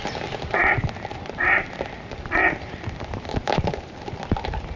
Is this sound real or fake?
fake